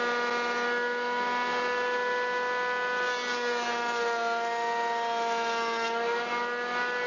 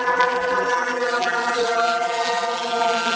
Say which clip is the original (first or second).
first